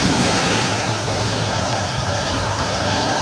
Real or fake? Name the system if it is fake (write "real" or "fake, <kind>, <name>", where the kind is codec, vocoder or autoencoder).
fake, codec, SNAC